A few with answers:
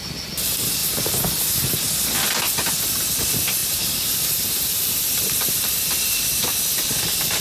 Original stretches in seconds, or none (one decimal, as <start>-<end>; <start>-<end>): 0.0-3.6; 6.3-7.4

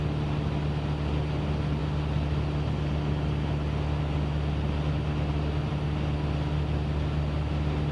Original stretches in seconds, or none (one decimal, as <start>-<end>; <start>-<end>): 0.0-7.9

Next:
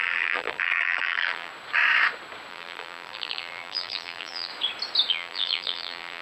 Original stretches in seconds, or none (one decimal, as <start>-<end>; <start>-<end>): 1.5-2.5; 4.5-5.1

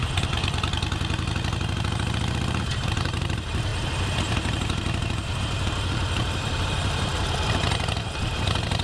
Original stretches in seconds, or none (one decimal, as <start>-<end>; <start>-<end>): 0.4-2.6; 3.7-4.2; 7.1-8.0

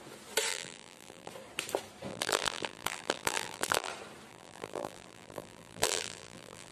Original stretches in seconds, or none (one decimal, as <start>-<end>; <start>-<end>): 0.0-0.5; 1.3-2.1; 3.9-4.3

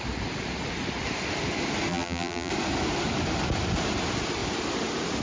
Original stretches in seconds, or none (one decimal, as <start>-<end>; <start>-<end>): 0.0-1.9; 2.5-5.2